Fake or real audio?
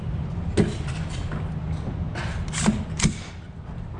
real